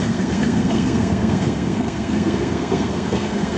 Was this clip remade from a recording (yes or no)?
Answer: yes